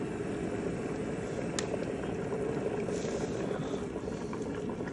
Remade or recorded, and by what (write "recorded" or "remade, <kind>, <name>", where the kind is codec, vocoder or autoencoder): recorded